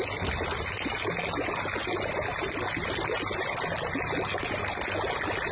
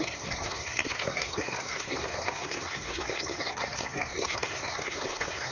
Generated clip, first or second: second